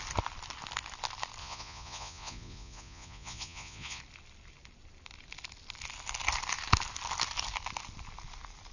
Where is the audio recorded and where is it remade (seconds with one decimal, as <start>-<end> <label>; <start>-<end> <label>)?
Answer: 0.0-1.4 recorded; 1.4-4.0 remade; 4.0-8.7 recorded